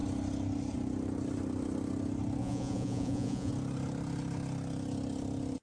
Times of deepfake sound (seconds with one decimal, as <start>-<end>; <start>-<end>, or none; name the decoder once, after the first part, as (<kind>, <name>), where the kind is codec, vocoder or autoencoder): 2.4-3.5 (vocoder, Vocos)